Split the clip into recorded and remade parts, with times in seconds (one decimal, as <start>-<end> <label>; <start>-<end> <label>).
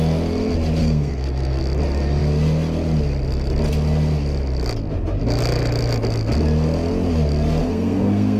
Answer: 0.0-0.8 recorded; 0.8-1.6 remade; 1.6-7.6 recorded; 7.6-8.4 remade